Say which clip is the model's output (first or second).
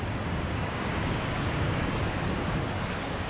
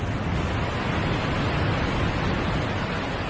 first